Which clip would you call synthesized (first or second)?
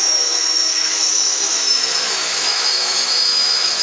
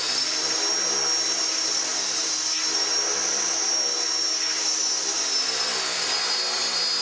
first